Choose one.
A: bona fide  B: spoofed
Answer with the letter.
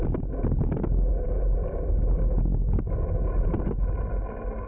A